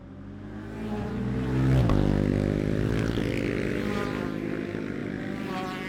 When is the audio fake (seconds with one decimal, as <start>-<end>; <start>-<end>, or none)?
2.3-2.9; 5.0-5.5

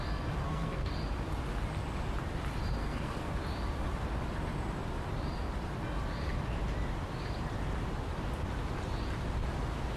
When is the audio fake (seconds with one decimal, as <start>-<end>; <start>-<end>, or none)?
0.4-0.9; 2.8-3.3

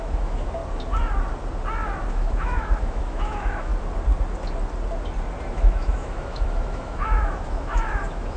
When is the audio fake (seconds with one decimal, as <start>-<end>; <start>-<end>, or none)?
0.0-0.6; 2.1-3.7; 5.5-8.4